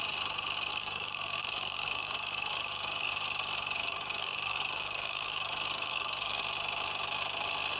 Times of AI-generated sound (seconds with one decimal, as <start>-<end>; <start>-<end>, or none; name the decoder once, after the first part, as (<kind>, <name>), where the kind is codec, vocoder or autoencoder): 0.7-3.1 (codec, DAC); 3.8-6.4

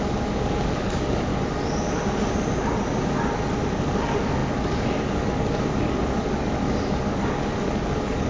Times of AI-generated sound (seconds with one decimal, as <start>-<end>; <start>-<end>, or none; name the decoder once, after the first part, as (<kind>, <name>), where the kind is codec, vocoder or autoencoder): 0.0-1.3 (codec, DAC); 3.6-8.3

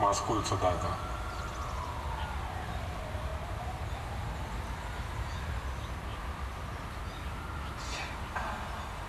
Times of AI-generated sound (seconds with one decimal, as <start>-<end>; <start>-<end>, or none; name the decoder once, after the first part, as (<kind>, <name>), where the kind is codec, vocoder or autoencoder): none

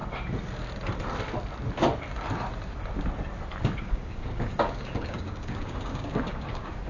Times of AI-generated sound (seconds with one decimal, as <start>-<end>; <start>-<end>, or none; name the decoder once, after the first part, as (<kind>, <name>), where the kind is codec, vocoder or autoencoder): 3.8-6.9 (codec, DAC)

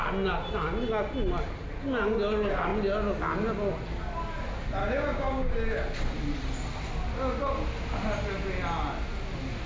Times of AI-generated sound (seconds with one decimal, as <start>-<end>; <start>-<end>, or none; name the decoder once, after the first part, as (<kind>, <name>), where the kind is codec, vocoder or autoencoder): 4.8-5.5 (codec, DAC)